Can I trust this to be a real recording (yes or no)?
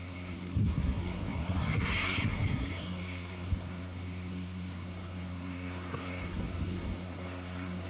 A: no